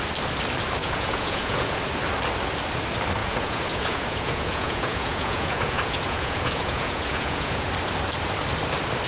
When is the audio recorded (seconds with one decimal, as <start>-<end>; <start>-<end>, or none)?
0.0-0.8; 1.8-3.2; 7.7-9.1